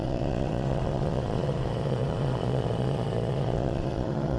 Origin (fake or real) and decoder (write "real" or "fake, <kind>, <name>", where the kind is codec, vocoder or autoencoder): fake, vocoder, Vocos